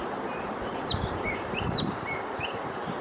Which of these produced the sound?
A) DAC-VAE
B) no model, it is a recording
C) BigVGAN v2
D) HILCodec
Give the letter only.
C